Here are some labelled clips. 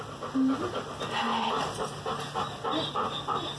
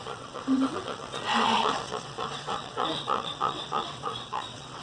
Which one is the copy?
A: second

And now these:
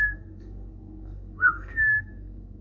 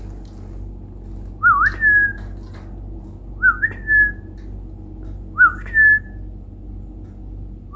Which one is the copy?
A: first